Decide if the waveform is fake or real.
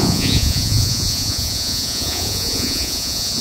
fake